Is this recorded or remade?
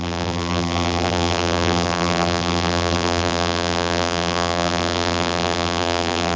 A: remade